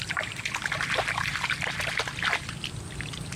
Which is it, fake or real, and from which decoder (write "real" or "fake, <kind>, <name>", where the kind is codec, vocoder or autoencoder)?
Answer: real